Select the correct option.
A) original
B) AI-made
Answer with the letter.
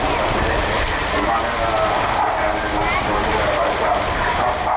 A